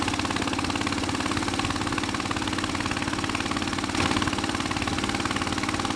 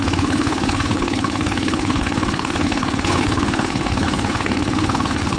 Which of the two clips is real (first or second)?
first